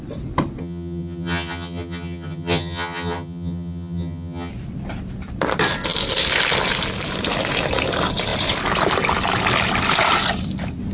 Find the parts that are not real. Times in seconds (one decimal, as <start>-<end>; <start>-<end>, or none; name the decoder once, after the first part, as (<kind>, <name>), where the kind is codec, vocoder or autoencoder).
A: 0.6-4.5 (vocoder, HiFi-GAN)